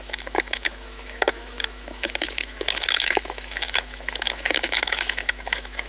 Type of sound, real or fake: fake